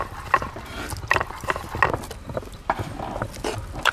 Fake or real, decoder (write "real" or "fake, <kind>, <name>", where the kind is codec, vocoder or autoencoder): real